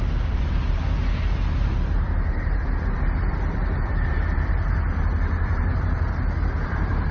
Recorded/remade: remade